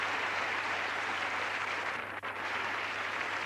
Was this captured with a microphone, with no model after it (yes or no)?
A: no